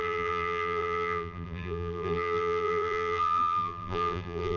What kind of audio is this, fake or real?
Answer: fake